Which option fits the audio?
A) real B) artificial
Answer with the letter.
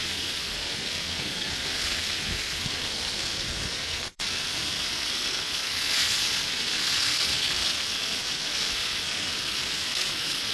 B